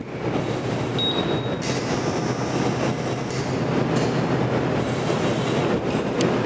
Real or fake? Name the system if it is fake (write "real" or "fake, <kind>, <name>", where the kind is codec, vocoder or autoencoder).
real